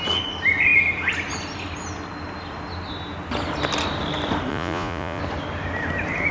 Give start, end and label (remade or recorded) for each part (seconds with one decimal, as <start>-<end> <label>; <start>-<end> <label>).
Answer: 0.0-4.5 recorded; 4.5-5.2 remade; 5.2-6.3 recorded